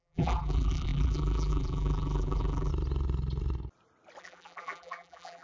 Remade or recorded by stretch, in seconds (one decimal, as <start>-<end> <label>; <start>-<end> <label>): 0.0-2.7 remade; 2.7-4.2 recorded; 4.2-5.4 remade